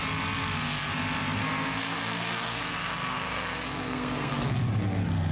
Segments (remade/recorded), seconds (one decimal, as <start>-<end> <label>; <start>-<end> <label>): 0.0-1.4 recorded; 1.4-4.5 remade; 4.5-5.3 recorded